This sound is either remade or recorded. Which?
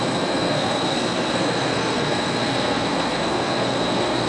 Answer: remade